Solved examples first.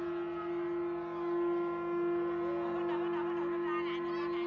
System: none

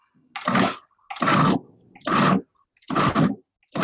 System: none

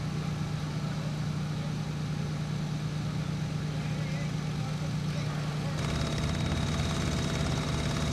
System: none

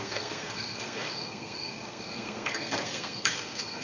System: codec, SNAC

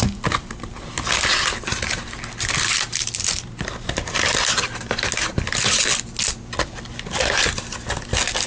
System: none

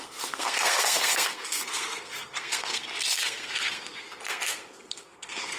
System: codec, SNAC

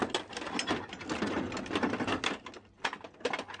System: none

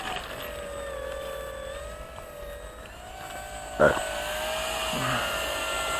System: none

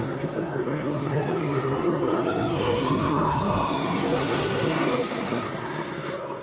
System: codec, SNAC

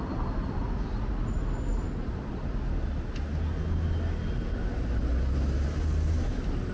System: none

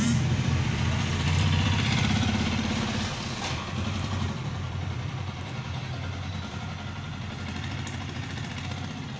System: vocoder, BigVGAN v2